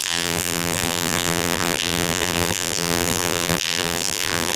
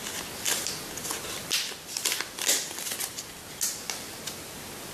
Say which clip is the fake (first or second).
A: first